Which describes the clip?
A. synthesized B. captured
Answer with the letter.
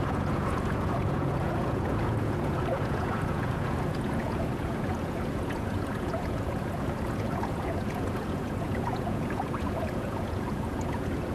A